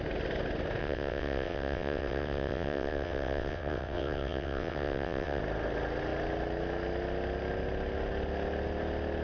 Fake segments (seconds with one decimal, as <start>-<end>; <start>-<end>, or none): 0.8-5.4